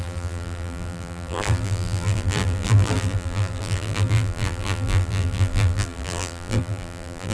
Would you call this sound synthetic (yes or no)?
yes